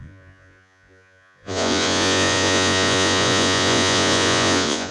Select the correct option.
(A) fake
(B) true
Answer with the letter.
A